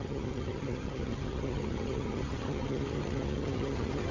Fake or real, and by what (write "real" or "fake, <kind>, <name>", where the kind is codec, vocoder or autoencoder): fake, vocoder, HiFi-GAN